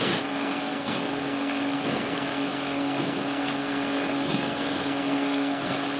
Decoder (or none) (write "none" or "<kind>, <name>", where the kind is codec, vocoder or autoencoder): codec, SNAC